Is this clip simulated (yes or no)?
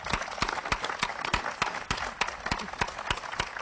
no